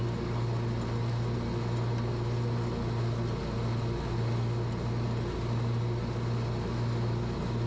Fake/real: real